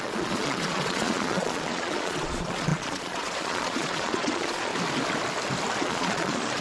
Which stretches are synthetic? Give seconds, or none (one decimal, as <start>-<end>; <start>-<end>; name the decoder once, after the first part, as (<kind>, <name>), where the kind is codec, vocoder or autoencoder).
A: 0.0-4.7 (vocoder, Vocos); 5.8-6.6